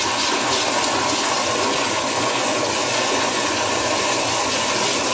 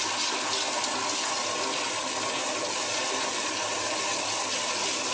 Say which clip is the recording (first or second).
second